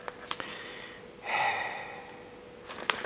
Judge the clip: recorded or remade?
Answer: recorded